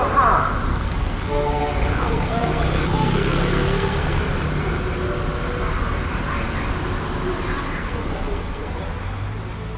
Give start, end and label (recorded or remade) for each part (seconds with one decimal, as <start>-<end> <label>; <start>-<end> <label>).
0.0-0.7 recorded; 0.7-4.2 remade; 4.2-7.8 recorded; 7.8-8.8 remade; 8.8-9.8 recorded